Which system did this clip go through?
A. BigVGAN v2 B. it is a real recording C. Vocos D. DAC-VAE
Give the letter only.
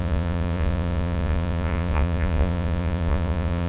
C